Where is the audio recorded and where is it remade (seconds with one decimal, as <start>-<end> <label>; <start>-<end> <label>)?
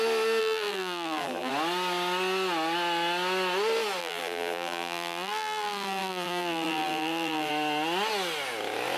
0.0-0.4 recorded; 0.4-1.5 remade; 1.5-4.0 recorded; 4.0-7.5 remade; 7.5-9.0 recorded